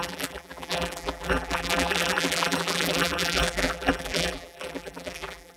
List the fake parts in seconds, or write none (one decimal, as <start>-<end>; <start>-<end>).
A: 0.0-5.6